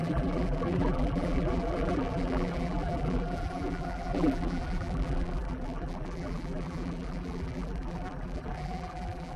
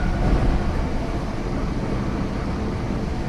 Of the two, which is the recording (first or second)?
second